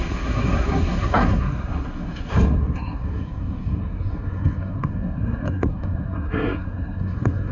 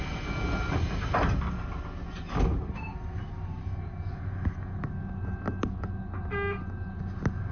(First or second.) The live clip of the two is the second